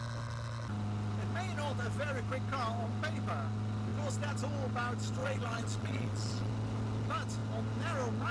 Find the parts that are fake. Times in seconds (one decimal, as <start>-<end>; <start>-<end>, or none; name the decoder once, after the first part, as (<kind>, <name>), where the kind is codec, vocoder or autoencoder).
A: 5.2-6.5 (vocoder, WaveNeXt)